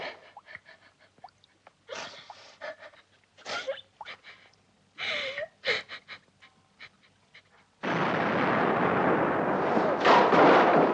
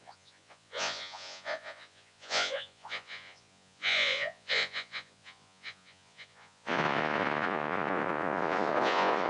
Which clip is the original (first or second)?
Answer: first